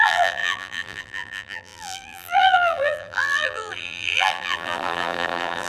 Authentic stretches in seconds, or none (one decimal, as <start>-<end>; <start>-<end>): none